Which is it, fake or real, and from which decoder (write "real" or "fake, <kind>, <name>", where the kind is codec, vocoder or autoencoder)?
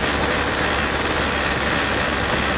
real